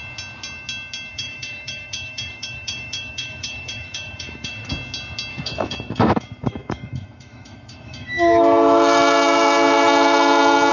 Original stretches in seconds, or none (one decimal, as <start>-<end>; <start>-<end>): 0.0-1.1; 4.7-5.3

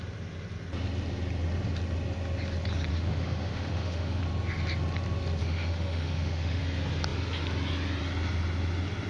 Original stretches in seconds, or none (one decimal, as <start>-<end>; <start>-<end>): 0.0-2.9; 4.2-5.4; 6.6-9.1

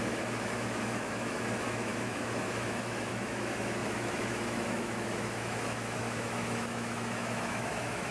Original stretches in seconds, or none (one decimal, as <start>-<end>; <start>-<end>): none